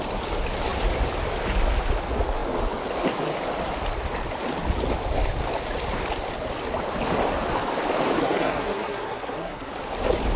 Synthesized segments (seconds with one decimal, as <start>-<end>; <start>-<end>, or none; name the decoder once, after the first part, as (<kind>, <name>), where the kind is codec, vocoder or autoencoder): 8.2-9.7 (codec, SNAC)